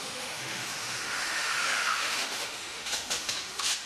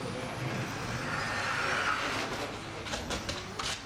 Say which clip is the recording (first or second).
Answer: second